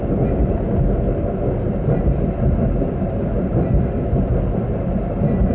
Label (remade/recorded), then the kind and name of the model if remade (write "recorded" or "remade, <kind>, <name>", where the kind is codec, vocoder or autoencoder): recorded